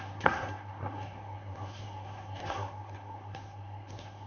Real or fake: fake